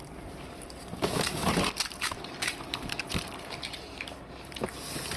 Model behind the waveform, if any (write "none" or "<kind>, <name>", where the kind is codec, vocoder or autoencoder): vocoder, BigVGAN v2